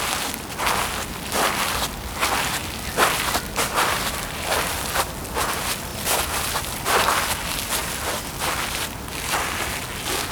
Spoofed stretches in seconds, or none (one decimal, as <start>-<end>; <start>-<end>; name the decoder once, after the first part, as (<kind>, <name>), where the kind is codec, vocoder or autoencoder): 2.6-5.1 (vocoder, BigVGAN v2); 5.9-7.3